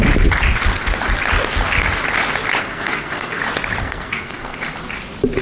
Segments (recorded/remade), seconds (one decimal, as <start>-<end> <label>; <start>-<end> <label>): 0.0-2.6 recorded; 2.6-3.4 remade; 3.4-3.8 recorded; 3.8-4.6 remade; 4.6-5.4 recorded